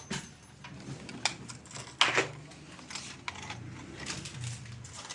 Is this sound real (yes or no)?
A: yes